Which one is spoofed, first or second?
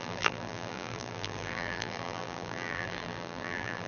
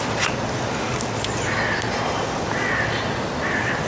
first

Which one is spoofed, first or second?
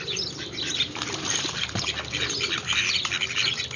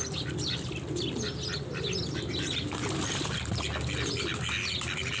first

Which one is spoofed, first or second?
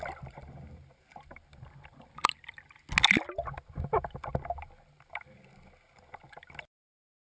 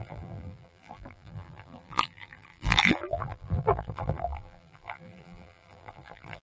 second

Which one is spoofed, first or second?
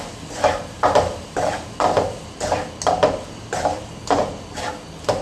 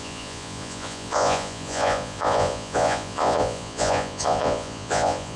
second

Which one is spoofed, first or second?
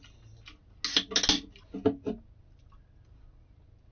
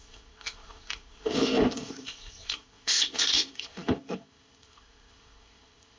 second